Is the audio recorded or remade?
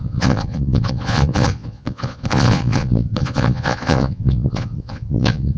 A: remade